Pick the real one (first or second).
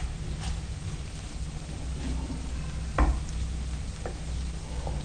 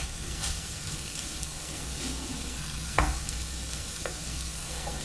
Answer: first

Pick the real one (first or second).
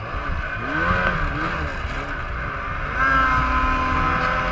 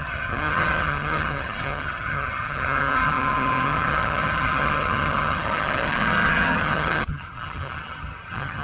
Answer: first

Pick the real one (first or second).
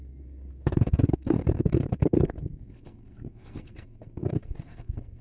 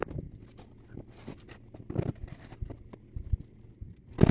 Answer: second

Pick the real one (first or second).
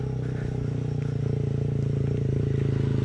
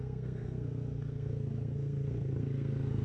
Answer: first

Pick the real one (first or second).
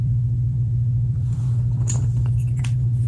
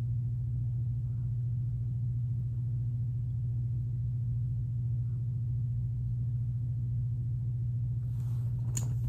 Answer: second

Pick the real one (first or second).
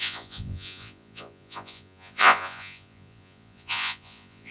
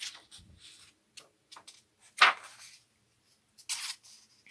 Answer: second